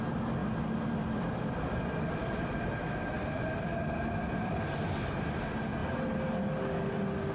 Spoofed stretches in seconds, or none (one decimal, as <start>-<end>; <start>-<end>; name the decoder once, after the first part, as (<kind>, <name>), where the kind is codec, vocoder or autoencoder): 0.4-2.8 (vocoder, BigVGAN v2); 3.7-4.6